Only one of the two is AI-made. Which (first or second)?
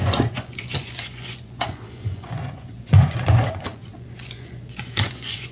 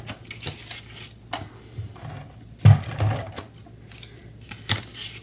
first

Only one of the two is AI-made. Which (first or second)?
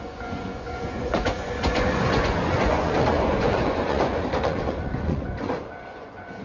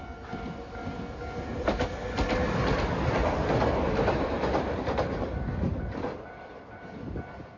first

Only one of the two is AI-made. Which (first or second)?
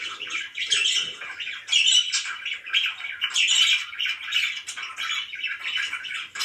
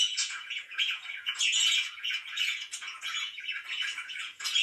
second